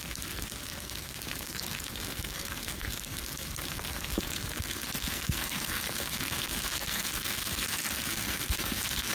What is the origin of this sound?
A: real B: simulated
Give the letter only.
B